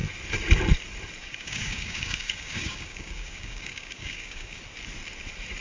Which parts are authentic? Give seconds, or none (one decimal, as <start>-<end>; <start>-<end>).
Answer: 0.0-1.2; 4.6-5.6